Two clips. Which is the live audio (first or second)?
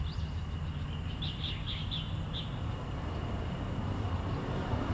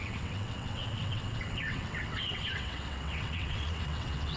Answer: first